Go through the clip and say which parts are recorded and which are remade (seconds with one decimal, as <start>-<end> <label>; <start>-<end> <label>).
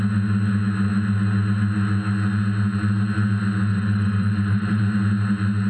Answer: 0.0-3.7 recorded; 3.7-4.8 remade; 4.8-5.7 recorded